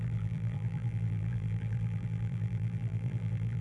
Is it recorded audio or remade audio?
remade